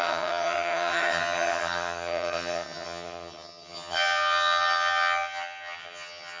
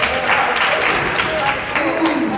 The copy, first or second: first